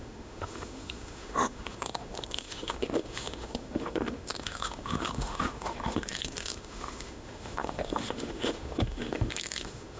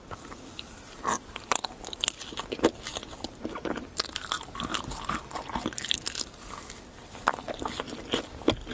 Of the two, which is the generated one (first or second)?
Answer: first